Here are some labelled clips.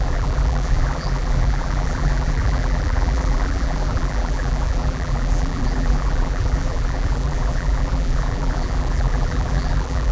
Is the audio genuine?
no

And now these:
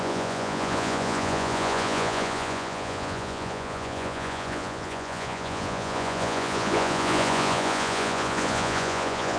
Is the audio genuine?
no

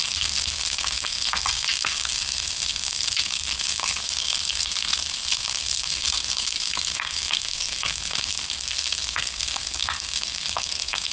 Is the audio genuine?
no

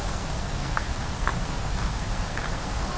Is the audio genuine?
no